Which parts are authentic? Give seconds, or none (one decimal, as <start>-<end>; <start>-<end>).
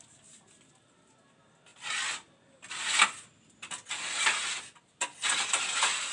0.0-6.1